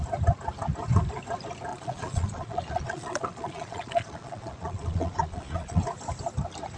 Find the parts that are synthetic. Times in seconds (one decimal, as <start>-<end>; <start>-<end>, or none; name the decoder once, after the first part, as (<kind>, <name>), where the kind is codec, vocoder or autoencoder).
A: 1.7-5.8 (vocoder, Vocos)